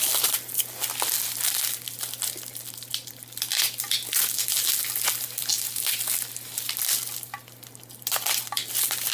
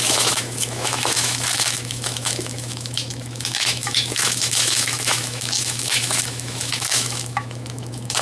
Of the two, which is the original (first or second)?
first